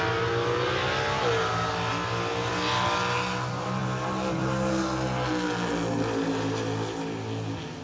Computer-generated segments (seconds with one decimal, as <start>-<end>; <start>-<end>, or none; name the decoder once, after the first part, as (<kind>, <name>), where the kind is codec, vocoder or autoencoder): none